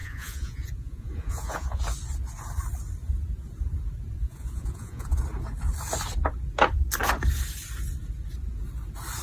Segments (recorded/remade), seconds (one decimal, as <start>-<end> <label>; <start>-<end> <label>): 0.0-1.8 remade; 1.8-4.2 recorded; 4.2-5.2 remade; 5.2-9.2 recorded